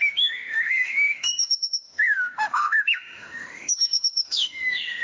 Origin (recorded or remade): remade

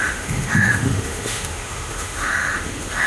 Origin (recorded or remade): remade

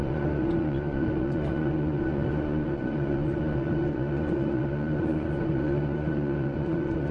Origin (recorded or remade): remade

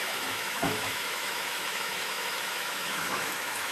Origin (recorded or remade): remade